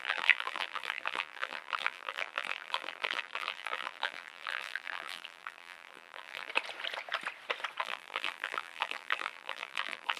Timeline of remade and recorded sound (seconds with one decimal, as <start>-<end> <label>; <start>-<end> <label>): 0.0-6.5 remade; 6.5-7.8 recorded; 7.8-10.2 remade